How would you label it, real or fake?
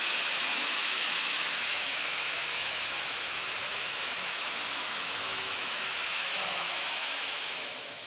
fake